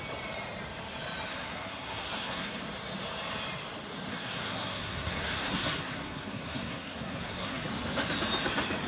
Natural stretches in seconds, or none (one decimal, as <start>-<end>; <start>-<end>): 0.0-1.3; 2.6-4.1; 7.7-8.9